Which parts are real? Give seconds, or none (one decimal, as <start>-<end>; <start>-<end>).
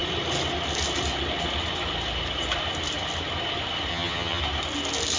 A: 0.0-3.9; 4.4-5.2